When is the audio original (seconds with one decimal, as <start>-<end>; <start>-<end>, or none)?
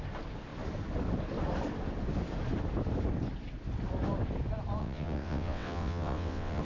0.0-4.8